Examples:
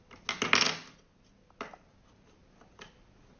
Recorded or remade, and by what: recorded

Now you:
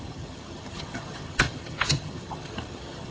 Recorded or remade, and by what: remade, vocoder, HiFi-GAN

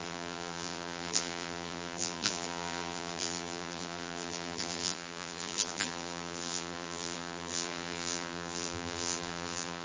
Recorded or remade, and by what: remade, vocoder, BigVGAN v2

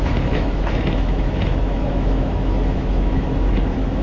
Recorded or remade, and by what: remade, autoencoder, DAC-VAE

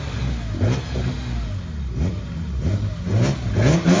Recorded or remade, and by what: recorded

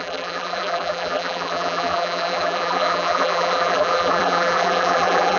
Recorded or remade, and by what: remade, vocoder, BigVGAN v2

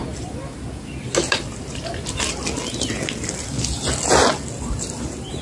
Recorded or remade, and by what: recorded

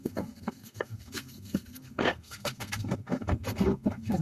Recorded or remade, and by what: remade, codec, SNAC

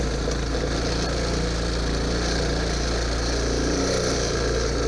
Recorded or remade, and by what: recorded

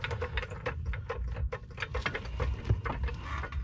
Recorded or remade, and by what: recorded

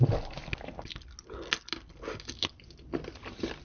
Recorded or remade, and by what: recorded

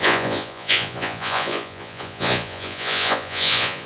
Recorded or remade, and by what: remade, vocoder, Vocos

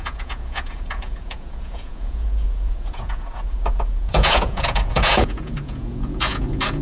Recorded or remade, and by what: remade, vocoder, Vocos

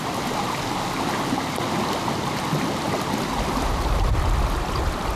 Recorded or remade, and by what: recorded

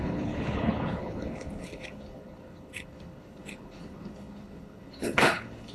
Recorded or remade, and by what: remade, codec, HILCodec